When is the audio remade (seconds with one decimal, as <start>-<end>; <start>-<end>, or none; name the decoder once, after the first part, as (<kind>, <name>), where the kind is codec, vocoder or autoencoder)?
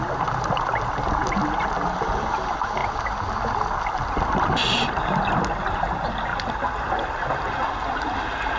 2.8-3.4 (vocoder, BigVGAN v2)